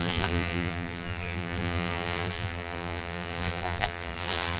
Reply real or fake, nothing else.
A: fake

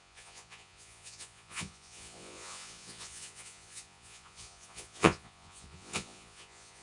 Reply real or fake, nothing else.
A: fake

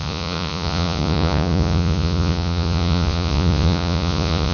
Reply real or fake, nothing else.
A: fake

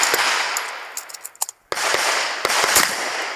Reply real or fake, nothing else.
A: real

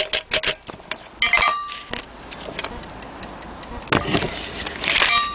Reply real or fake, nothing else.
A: real